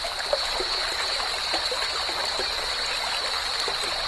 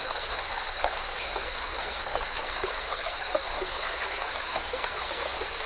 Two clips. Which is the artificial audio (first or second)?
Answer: second